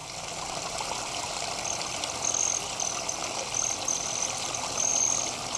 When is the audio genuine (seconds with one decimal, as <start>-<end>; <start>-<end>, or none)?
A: 0.0-5.6